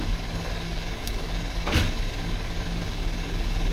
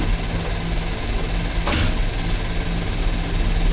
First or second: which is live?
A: second